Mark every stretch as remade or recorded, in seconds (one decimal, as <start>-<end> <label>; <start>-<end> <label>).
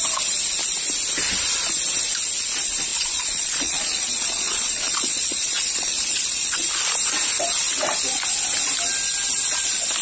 0.0-2.9 recorded; 2.9-6.7 remade; 6.7-10.0 recorded